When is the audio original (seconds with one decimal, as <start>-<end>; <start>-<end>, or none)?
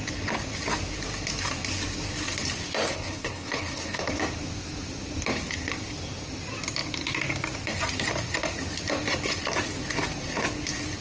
0.0-2.9; 4.2-11.0